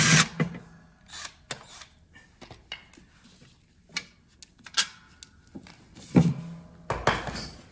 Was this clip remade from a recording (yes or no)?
no